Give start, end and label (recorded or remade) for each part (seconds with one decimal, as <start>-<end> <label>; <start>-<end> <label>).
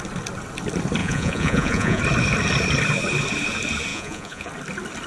0.0-1.0 recorded; 1.0-2.0 remade; 2.0-3.9 recorded; 3.9-4.5 remade; 4.5-5.1 recorded